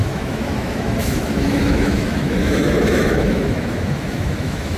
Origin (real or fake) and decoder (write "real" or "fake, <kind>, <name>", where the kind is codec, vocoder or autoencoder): fake, autoencoder, DAC-VAE